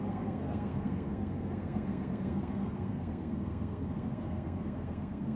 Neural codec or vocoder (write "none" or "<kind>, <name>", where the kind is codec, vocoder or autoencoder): codec, SNAC